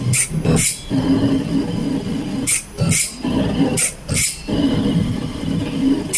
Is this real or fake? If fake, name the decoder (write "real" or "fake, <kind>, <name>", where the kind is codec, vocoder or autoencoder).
real